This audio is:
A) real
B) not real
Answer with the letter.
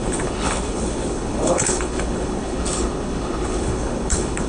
B